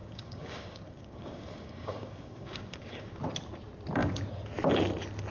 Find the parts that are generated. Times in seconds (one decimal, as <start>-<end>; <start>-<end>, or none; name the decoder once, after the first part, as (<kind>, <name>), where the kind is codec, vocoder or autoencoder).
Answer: 0.0-3.2 (codec, DAC)